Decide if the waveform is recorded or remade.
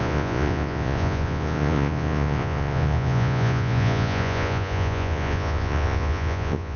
remade